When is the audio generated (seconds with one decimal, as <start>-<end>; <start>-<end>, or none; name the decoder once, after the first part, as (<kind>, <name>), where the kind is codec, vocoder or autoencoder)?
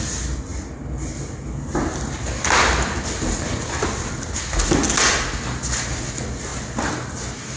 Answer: none